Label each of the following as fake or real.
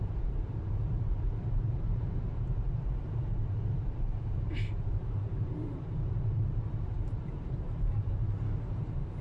fake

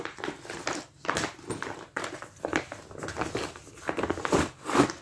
real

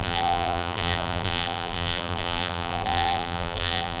fake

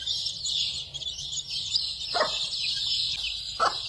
real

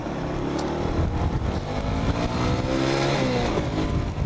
real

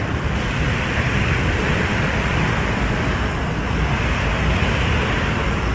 fake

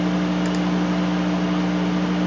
real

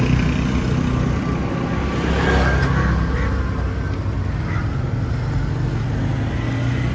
real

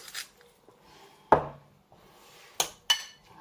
real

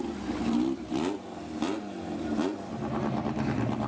real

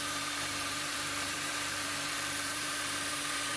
fake